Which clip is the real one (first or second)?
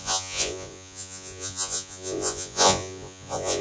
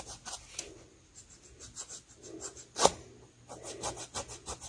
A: second